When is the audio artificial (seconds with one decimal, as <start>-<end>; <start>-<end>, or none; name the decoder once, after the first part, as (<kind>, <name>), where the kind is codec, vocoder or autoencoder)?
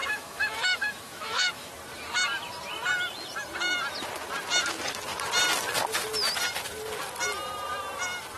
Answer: 0.0-1.7 (autoencoder, DAC-VAE)